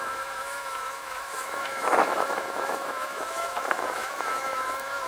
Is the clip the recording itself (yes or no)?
no